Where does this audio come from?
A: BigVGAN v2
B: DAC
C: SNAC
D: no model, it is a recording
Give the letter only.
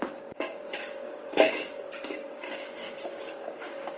B